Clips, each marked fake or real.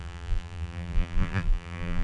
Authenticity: fake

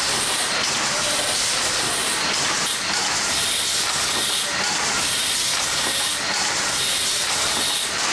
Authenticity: real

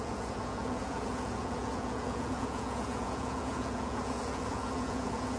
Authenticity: fake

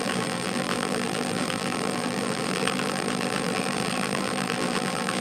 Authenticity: fake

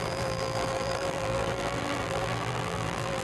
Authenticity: fake